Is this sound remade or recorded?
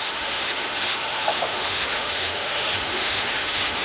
remade